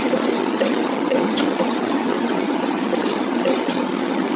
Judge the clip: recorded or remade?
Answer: remade